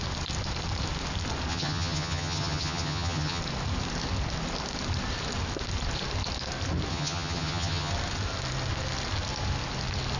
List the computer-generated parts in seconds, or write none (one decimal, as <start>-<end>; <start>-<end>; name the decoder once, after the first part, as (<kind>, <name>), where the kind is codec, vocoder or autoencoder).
1.5-3.4 (vocoder, HiFi-GAN); 6.9-7.9